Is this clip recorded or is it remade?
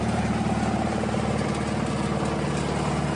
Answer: recorded